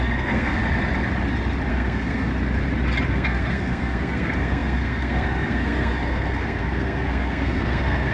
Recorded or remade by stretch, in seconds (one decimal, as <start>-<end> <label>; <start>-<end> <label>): 0.0-0.6 remade; 0.6-1.7 recorded; 1.7-2.3 remade; 2.3-3.1 recorded; 3.1-8.1 remade